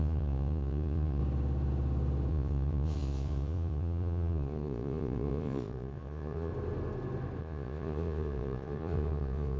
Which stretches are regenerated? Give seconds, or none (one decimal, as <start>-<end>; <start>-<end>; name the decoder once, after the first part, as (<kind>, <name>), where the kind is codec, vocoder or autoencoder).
0.0-1.2 (vocoder, Vocos); 2.3-6.5; 7.4-9.6